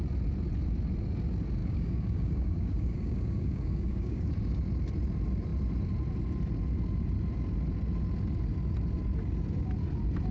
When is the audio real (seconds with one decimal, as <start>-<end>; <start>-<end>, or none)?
0.0-1.6; 4.3-10.3